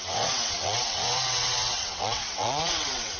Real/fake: fake